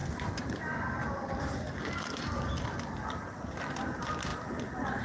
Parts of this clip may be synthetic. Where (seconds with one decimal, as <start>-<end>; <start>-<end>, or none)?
0.0-5.0

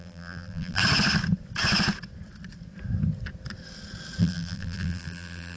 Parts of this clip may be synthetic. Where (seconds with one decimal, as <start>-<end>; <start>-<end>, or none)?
0.0-0.8; 4.2-5.6

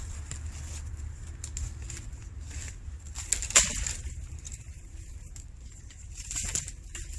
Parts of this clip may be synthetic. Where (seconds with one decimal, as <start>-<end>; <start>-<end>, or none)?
4.5-6.7